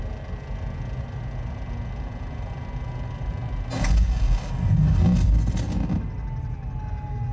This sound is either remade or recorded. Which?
recorded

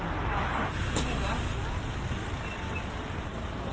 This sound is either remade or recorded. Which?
recorded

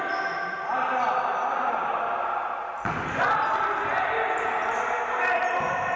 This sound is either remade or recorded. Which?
recorded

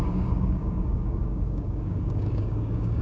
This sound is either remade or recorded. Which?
remade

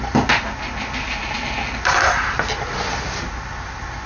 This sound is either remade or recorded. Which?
recorded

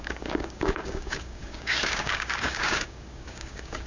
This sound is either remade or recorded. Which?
remade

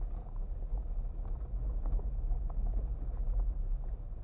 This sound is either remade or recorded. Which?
recorded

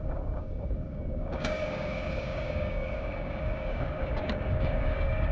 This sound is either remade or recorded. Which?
remade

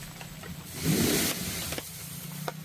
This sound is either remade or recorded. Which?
recorded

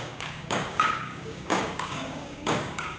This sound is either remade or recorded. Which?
remade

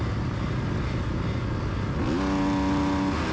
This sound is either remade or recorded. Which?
recorded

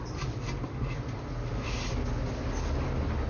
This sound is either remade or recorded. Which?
recorded